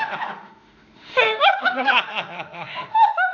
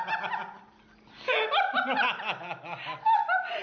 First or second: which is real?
second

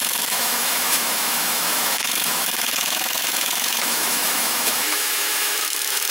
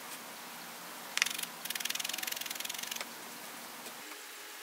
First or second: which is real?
second